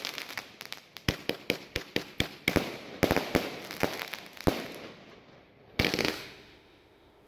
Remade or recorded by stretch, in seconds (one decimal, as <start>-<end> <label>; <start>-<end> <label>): 0.0-6.0 recorded; 6.0-7.3 remade